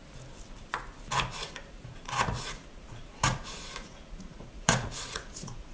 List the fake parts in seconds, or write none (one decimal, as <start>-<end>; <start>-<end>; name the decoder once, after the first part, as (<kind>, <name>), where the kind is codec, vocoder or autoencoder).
1.3-5.7 (vocoder, Vocos)